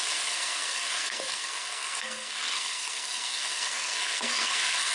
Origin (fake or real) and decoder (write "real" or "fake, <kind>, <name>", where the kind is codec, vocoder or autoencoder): fake, codec, SNAC